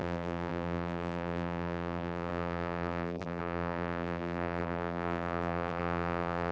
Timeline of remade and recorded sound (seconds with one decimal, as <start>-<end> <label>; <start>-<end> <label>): 0.0-6.5 remade